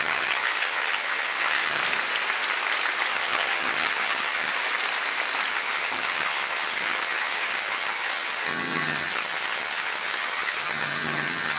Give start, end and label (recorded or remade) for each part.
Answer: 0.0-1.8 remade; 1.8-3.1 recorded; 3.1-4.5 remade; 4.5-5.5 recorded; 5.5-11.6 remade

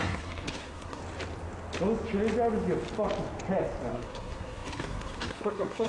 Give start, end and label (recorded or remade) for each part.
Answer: 0.0-1.0 remade; 1.0-3.9 recorded; 3.9-5.9 remade

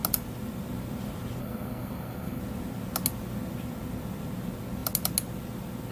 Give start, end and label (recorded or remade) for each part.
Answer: 0.0-1.4 recorded; 1.4-2.4 remade; 2.4-5.9 recorded

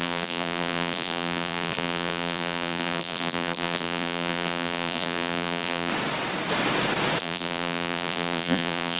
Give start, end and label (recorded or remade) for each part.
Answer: 0.0-5.9 remade; 5.9-7.2 recorded; 7.2-9.0 remade